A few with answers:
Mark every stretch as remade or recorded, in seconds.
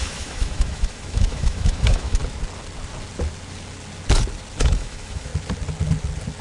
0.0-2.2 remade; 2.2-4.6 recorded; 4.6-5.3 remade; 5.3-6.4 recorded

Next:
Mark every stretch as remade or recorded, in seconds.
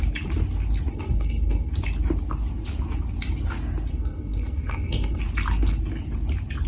0.0-0.9 recorded; 0.9-1.7 remade; 1.7-3.9 recorded; 3.9-5.2 remade; 5.2-6.7 recorded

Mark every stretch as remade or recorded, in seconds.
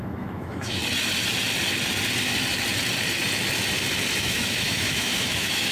0.0-0.8 remade; 0.8-4.2 recorded; 4.2-5.7 remade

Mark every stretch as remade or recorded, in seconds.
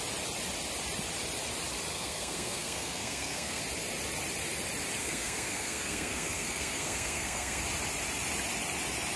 0.0-1.9 recorded; 1.9-3.6 remade; 3.6-5.0 recorded; 5.0-7.6 remade; 7.6-9.2 recorded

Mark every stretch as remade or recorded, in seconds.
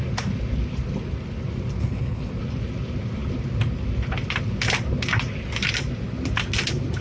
0.0-1.8 recorded; 1.8-2.3 remade; 2.3-7.0 recorded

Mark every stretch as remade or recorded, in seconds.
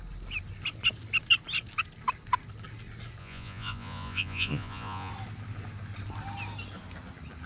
0.0-3.2 recorded; 3.2-5.1 remade; 5.1-7.5 recorded